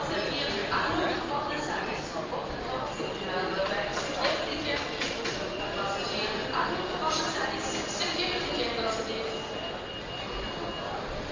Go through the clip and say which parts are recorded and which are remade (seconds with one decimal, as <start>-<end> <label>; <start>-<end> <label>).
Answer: 0.0-11.3 recorded